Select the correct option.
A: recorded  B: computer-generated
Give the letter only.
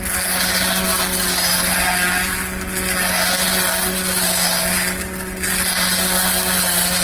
A